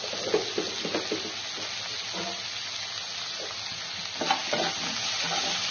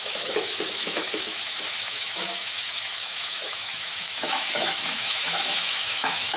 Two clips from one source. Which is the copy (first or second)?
second